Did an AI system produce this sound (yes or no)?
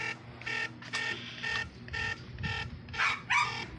no